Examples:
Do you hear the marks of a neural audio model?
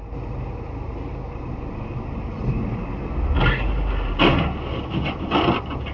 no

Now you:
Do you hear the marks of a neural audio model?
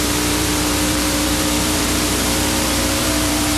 yes